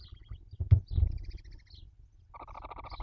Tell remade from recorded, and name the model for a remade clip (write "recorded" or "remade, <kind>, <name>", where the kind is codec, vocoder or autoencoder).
recorded